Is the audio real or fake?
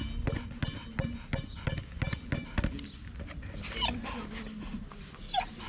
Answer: real